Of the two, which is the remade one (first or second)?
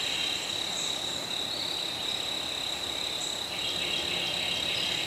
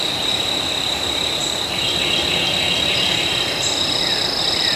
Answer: second